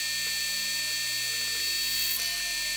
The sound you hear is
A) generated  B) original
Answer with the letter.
B